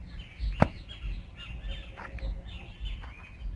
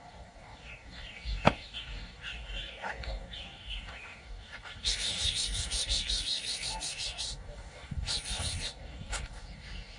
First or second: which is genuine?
first